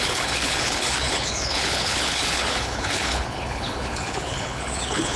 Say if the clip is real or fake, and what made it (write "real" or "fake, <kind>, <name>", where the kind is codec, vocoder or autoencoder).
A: fake, codec, HILCodec